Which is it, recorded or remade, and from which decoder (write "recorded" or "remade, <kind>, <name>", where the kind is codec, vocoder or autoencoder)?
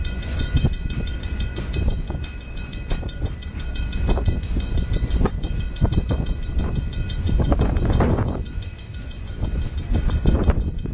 remade, vocoder, Vocos